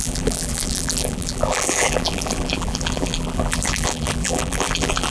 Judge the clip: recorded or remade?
remade